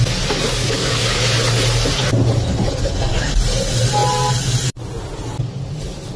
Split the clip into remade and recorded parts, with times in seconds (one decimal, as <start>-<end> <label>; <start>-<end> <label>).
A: 0.0-0.6 recorded; 0.6-1.2 remade; 1.2-6.2 recorded